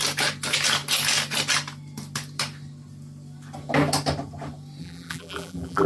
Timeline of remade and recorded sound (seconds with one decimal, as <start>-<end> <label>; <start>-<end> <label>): 0.0-4.8 recorded; 4.8-5.9 remade